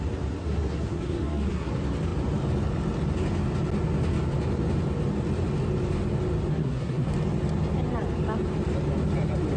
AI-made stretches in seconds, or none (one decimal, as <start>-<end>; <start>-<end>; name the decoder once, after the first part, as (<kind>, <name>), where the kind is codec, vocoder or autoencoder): 0.4-1.7 (codec, SNAC); 6.5-7.1